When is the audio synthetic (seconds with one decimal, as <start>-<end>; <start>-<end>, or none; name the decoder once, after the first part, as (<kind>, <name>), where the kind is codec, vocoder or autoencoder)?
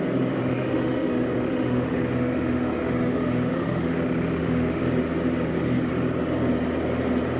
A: 0.4-4.8 (autoencoder, DAC-VAE)